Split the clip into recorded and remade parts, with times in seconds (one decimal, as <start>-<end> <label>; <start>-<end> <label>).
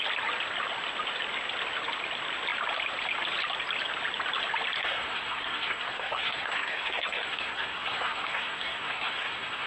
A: 0.0-4.8 recorded; 4.8-9.7 remade